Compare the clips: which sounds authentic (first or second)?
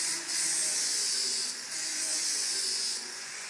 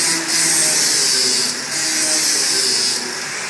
second